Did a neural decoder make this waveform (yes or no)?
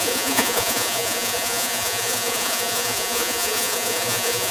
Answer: yes